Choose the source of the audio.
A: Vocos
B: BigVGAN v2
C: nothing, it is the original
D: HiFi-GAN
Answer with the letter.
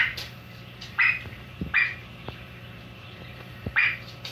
B